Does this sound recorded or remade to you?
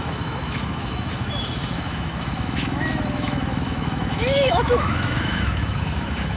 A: remade